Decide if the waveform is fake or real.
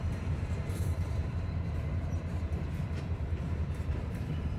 fake